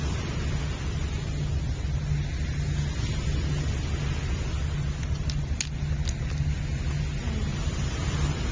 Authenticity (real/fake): real